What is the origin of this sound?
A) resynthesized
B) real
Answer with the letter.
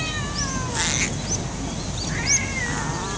B